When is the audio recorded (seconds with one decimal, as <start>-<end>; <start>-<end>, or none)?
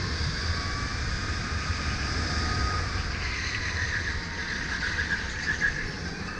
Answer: 0.0-6.4